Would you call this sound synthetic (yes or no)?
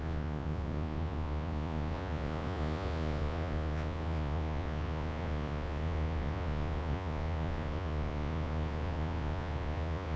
yes